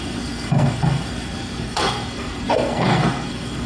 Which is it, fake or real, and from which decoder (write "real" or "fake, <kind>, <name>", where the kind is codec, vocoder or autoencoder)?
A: fake, codec, SNAC